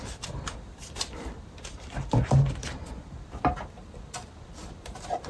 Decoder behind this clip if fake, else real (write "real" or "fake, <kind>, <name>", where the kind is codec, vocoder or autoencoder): fake, vocoder, BigVGAN v2